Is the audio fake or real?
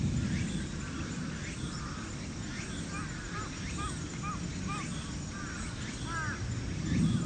real